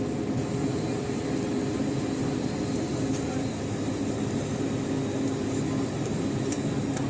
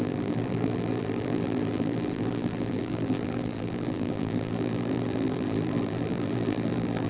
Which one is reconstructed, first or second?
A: second